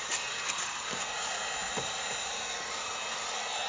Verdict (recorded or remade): recorded